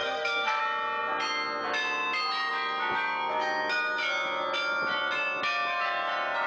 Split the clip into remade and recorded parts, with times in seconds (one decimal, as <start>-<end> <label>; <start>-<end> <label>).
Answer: 0.0-0.6 remade; 0.6-6.5 recorded